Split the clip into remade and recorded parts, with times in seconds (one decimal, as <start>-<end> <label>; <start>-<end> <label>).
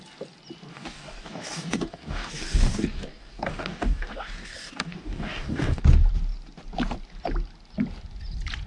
0.0-0.7 recorded; 0.7-5.8 remade; 5.8-8.7 recorded